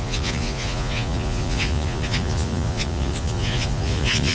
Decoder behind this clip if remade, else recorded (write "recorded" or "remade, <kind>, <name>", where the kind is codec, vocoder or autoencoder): remade, vocoder, Vocos